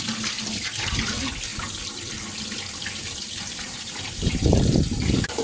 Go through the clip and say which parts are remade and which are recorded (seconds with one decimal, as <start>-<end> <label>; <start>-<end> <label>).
0.0-1.5 recorded; 1.5-4.7 remade; 4.7-5.4 recorded